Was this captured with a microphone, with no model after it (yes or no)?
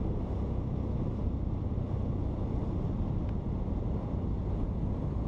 yes